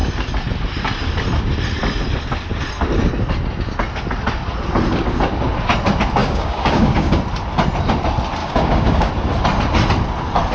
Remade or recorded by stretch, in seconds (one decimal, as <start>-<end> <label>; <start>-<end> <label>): 0.0-6.2 recorded; 6.2-7.2 remade; 7.2-8.4 recorded; 8.4-9.1 remade; 9.1-10.5 recorded